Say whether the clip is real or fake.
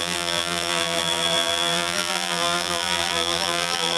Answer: fake